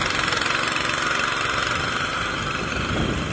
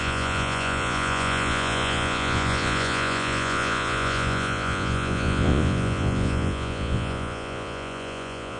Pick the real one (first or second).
first